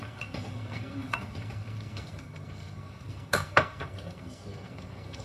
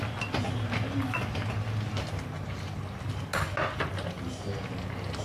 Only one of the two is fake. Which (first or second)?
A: first